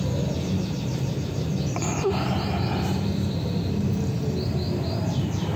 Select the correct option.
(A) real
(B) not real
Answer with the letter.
A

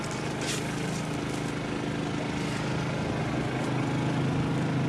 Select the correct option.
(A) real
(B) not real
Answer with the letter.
A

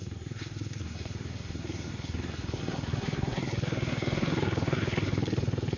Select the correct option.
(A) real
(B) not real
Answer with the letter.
B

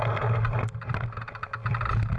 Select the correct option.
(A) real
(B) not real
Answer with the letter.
A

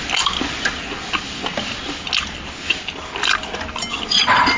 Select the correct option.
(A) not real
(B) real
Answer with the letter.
B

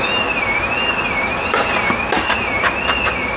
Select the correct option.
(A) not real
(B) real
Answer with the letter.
B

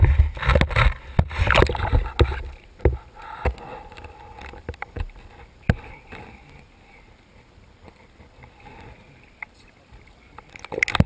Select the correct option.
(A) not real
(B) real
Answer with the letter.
B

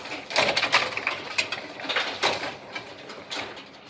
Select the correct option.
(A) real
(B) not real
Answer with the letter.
A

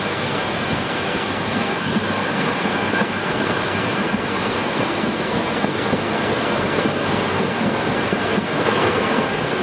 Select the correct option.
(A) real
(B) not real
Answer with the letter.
B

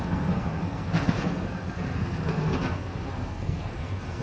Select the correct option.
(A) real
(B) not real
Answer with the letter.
B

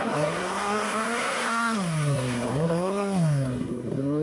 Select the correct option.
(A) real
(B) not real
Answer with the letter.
B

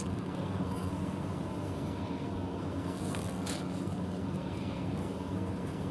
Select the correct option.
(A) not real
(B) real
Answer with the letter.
A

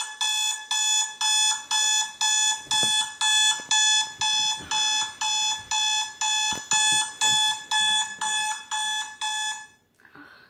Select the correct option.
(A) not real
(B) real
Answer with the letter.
B